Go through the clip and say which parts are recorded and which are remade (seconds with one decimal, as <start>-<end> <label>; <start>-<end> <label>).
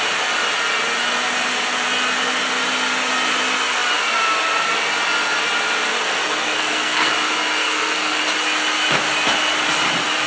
0.0-5.9 recorded; 5.9-7.1 remade; 7.1-7.6 recorded; 7.6-8.2 remade; 8.2-10.3 recorded